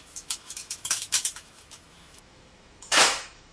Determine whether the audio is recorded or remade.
remade